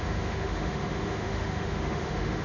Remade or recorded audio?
remade